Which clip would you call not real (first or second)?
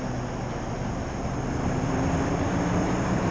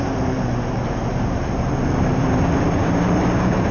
second